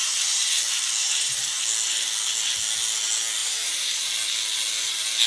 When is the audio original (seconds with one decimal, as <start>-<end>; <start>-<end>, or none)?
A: 0.6-1.0; 1.6-3.4; 4.1-5.3